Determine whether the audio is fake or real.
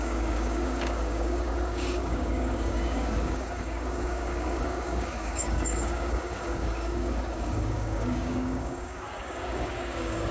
fake